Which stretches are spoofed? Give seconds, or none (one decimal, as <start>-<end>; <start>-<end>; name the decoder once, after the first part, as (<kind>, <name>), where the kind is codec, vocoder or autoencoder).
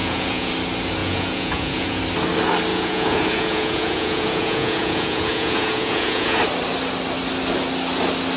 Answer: 0.0-0.5 (vocoder, Vocos); 1.0-2.0; 2.7-6.4